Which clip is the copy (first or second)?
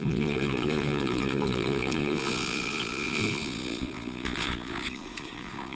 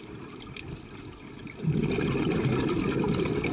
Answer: first